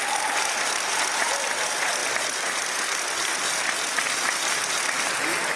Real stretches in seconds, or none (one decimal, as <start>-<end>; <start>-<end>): 0.0-5.6